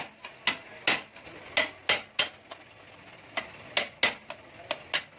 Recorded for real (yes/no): yes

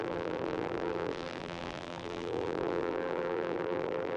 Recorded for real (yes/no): no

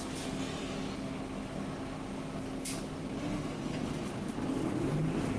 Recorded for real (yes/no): yes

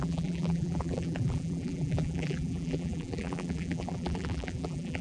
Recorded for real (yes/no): no